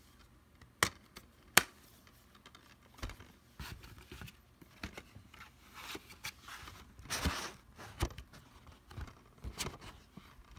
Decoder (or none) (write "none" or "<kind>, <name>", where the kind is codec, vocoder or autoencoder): none